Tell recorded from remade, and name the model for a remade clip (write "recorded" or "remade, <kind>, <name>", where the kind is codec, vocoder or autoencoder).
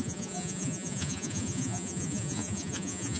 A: remade, vocoder, Vocos